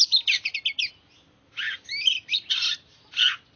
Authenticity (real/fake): real